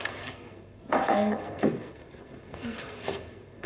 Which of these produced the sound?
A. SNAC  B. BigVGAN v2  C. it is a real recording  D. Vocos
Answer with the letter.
A